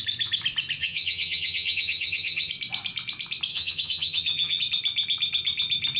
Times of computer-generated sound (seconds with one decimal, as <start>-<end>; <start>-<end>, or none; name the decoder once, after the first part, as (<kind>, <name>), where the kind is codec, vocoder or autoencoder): 0.8-2.5 (vocoder, HiFi-GAN); 3.5-4.6